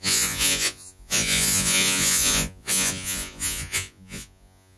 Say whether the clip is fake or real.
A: fake